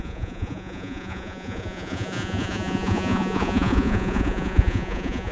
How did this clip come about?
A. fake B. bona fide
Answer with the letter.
A